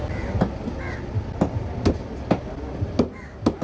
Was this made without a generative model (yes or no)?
yes